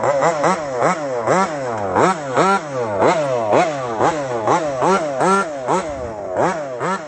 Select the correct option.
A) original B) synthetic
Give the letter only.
A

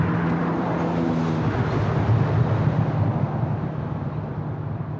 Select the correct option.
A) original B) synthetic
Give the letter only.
A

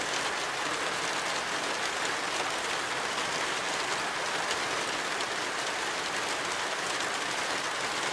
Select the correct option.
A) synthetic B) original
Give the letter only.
B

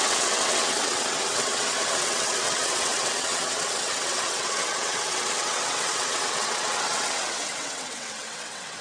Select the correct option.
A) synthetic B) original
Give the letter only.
A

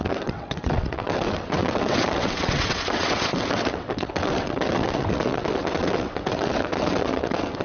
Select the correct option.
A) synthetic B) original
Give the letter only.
A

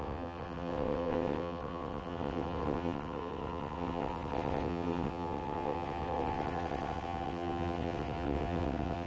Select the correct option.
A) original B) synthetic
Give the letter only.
B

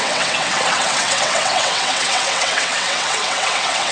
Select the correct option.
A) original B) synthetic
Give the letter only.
B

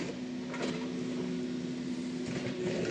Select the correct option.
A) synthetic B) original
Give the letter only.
B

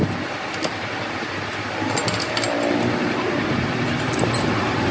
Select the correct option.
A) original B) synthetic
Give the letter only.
A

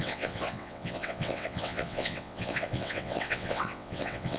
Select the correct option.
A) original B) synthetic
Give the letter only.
B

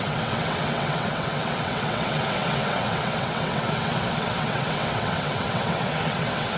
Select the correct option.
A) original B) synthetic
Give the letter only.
B